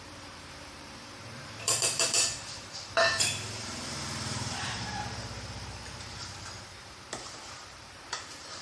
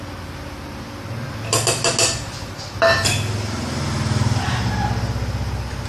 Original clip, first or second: second